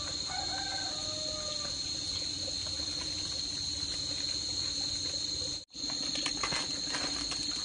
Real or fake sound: real